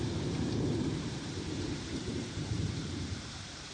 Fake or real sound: fake